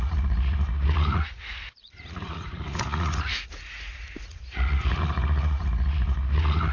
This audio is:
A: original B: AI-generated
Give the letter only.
B